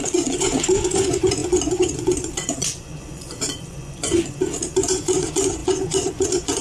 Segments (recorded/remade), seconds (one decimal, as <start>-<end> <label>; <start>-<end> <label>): 0.0-6.6 remade